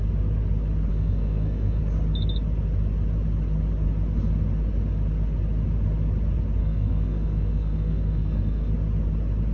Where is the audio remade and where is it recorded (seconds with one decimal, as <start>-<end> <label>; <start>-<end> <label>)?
0.0-0.9 recorded; 0.9-1.8 remade; 1.8-6.6 recorded; 6.6-8.7 remade; 8.7-9.5 recorded